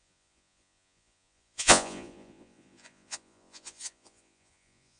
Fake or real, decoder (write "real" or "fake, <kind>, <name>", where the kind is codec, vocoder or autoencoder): fake, vocoder, Vocos